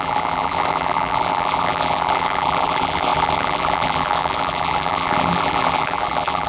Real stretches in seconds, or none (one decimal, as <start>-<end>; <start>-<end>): none

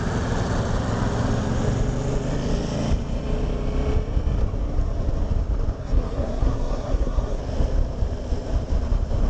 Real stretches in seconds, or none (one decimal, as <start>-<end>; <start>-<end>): 0.0-5.8; 7.4-9.3

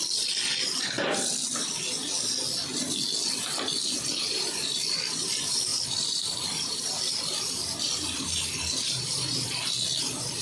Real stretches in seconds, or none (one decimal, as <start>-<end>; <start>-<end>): 1.4-4.5

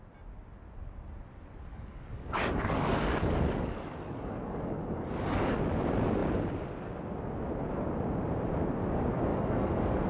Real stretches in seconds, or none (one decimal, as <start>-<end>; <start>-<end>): 0.0-1.7; 5.6-9.3